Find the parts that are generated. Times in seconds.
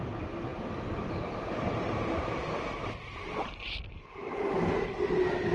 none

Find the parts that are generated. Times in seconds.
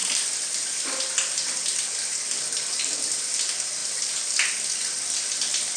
none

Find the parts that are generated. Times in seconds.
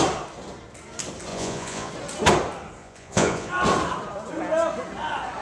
1.3-1.9 (vocoder, Vocos); 2.8-3.5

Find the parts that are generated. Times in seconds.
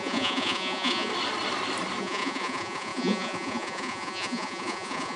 0.0-1.1 (vocoder, Vocos); 2.0-5.2